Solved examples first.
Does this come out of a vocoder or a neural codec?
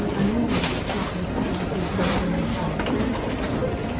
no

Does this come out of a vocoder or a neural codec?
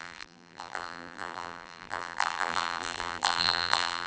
yes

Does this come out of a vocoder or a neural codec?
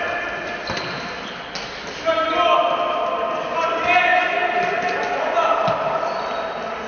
no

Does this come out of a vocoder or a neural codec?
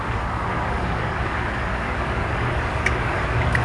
yes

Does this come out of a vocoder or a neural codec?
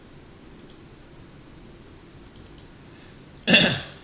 no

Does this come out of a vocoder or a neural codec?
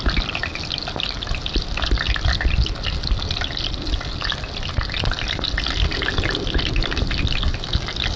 no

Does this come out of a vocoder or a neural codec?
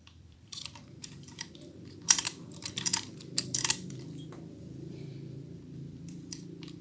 yes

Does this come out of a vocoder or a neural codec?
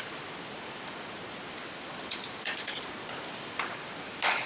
no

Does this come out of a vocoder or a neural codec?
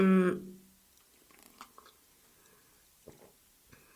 no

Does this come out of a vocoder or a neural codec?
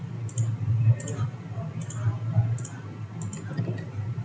no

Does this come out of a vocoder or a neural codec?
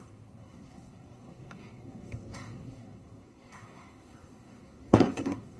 yes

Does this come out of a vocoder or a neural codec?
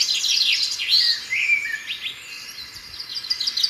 no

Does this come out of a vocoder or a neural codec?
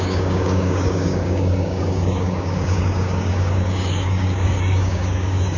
yes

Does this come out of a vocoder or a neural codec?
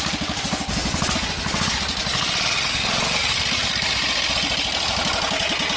no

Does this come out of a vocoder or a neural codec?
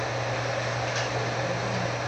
no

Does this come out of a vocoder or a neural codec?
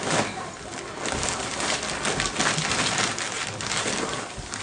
no